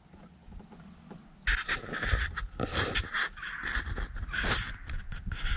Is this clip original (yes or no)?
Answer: yes